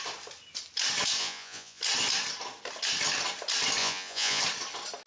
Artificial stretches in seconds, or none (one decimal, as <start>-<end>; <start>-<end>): 1.2-1.8; 3.8-4.4